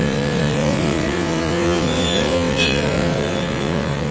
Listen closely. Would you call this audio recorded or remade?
remade